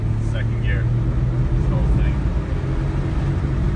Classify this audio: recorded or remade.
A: recorded